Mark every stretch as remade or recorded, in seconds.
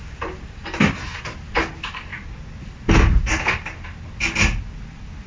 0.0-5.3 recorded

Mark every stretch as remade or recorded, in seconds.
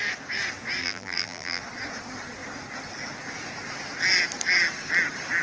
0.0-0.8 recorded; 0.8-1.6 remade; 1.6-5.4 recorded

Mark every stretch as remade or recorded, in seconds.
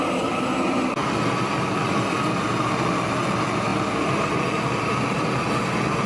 0.0-6.1 recorded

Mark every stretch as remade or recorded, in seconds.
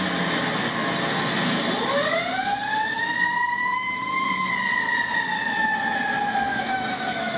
0.0-3.6 recorded; 3.6-4.5 remade; 4.5-6.5 recorded; 6.5-7.4 remade